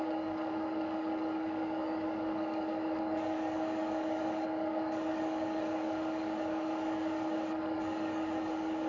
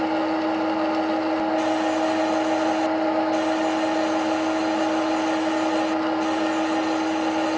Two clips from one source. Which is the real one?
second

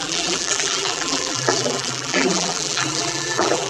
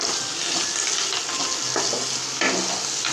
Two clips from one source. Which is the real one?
second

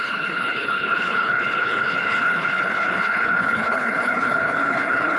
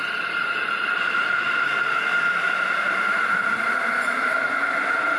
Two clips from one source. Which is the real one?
second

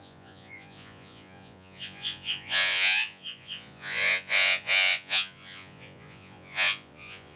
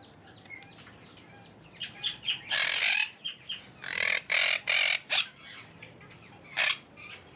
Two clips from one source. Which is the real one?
second